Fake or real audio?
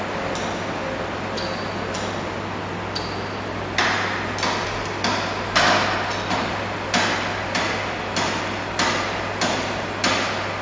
real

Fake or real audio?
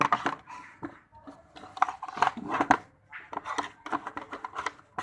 real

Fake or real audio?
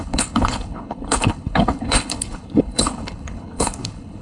fake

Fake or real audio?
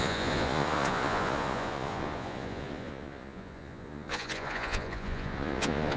fake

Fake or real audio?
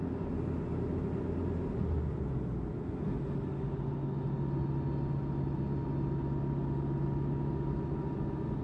real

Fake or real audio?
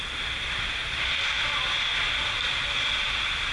real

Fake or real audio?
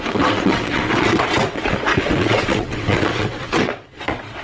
fake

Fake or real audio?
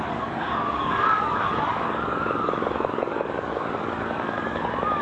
fake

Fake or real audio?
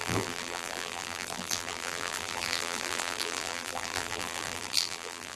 fake